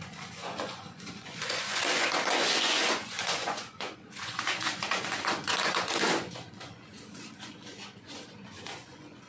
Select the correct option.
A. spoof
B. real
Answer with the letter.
A